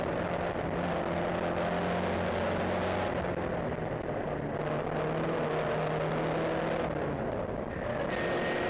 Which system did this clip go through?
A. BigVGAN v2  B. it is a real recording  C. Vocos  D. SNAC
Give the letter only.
B